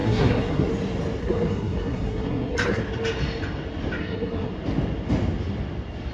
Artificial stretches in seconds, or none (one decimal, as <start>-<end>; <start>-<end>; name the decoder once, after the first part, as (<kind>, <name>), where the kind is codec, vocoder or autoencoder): 0.0-0.7 (codec, SNAC); 1.2-2.8; 4.0-4.5